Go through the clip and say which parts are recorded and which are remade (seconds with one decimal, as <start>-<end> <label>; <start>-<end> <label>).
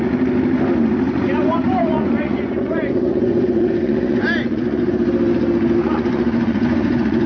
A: 0.0-1.3 recorded; 1.3-5.0 remade; 5.0-5.8 recorded; 5.8-7.3 remade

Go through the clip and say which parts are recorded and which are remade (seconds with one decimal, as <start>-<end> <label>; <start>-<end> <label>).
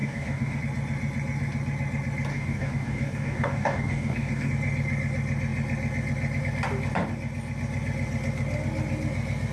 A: 0.0-0.6 remade; 0.6-2.3 recorded; 2.3-4.5 remade; 4.5-9.5 recorded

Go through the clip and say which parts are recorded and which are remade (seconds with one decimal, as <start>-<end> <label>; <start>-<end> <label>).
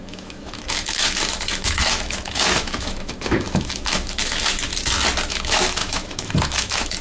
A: 0.0-4.7 remade; 4.7-5.3 recorded; 5.3-7.0 remade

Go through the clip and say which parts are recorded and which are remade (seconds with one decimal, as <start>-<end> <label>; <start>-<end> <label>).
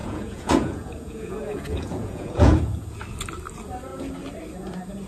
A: 0.0-2.6 remade; 2.6-5.1 recorded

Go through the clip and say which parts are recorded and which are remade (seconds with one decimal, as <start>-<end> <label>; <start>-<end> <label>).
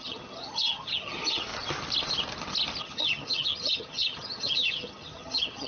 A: 0.0-1.5 remade; 1.5-2.8 recorded; 2.8-5.7 remade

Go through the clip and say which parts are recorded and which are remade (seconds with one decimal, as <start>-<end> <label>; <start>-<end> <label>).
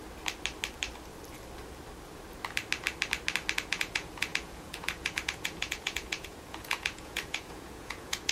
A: 0.0-3.6 recorded; 3.6-8.3 remade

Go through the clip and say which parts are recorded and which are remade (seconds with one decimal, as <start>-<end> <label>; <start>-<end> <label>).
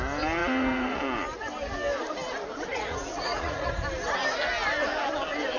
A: 0.0-0.4 recorded; 0.4-1.0 remade; 1.0-2.7 recorded; 2.7-3.7 remade; 3.7-5.6 recorded